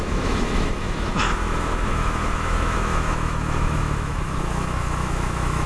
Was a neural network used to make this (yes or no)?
yes